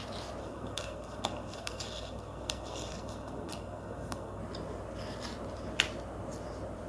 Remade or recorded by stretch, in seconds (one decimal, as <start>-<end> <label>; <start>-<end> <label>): 0.0-0.4 recorded; 0.4-4.4 remade; 4.4-6.9 recorded